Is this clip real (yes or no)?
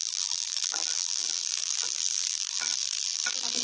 no